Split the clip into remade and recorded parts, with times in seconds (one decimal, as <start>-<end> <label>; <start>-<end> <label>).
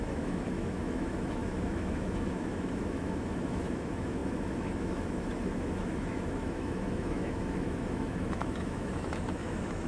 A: 0.0-9.9 remade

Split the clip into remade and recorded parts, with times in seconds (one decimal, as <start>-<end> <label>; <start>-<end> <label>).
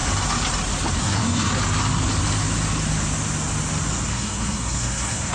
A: 0.0-1.0 recorded; 1.0-1.5 remade; 1.5-4.1 recorded; 4.1-5.3 remade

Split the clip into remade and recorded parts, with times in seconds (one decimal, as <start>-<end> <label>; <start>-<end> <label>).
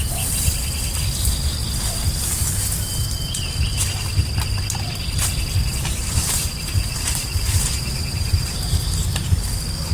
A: 0.0-6.2 recorded; 6.2-9.2 remade; 9.2-9.9 recorded